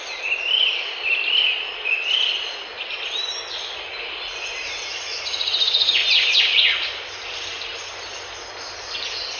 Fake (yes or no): no